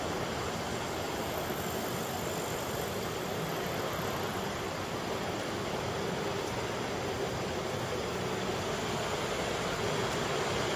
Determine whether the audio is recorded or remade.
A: recorded